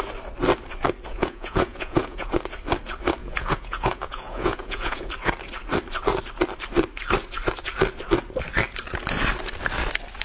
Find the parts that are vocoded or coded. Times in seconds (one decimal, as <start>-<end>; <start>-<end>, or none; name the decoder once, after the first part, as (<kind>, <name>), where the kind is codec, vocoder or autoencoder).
1.1-2.3 (vocoder, Vocos); 3.2-5.1